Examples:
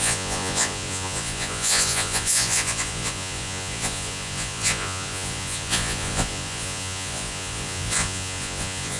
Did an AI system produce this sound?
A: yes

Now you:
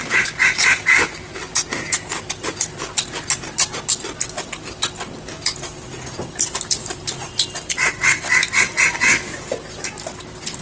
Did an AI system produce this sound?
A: no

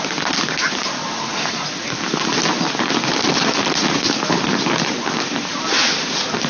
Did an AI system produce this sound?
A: no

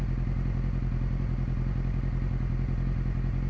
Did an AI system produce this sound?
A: no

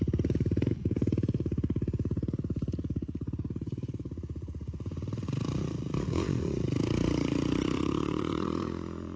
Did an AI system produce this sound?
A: yes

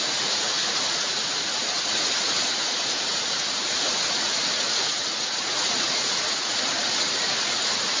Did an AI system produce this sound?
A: yes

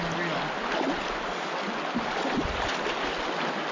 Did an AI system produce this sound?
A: no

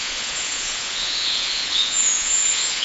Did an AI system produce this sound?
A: yes